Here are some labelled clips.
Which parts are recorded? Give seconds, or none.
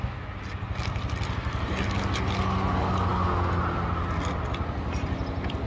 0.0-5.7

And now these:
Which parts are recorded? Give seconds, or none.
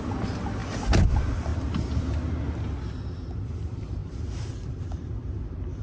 0.6-1.1; 1.5-3.4